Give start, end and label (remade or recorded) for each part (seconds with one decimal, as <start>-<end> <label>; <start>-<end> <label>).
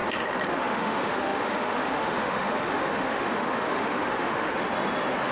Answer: 0.0-0.5 recorded; 0.5-4.5 remade; 4.5-5.3 recorded